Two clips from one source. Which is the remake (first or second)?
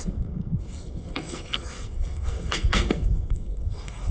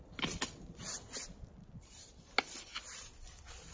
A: first